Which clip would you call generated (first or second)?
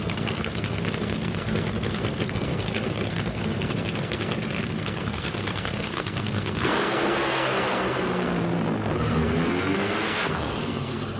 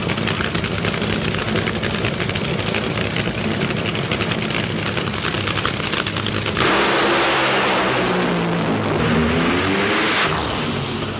first